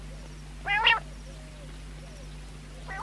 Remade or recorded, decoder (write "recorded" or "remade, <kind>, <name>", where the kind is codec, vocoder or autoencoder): recorded